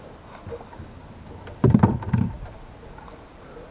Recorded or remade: recorded